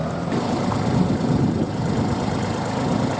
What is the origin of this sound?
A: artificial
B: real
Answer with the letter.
B